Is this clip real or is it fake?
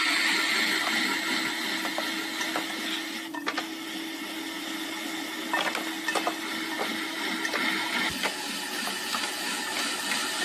real